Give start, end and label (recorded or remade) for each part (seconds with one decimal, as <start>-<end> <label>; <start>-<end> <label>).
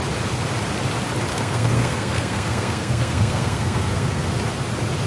0.0-1.3 recorded; 1.3-4.3 remade; 4.3-5.1 recorded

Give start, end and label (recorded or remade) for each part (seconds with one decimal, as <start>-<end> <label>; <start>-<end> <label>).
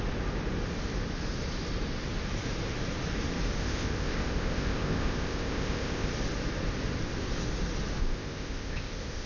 0.0-3.6 recorded; 3.6-6.1 remade; 6.1-8.0 recorded; 8.0-9.3 remade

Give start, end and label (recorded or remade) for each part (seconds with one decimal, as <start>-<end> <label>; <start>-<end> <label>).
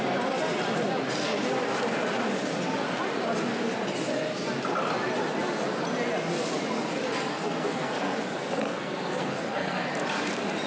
0.0-7.3 recorded; 7.3-8.2 remade; 8.2-8.6 recorded; 8.6-9.9 remade; 9.9-10.7 recorded